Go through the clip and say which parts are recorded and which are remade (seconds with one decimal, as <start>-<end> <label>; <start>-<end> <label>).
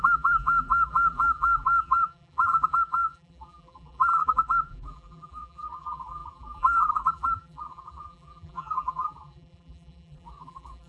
0.0-10.9 remade